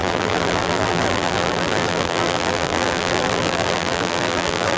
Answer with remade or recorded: remade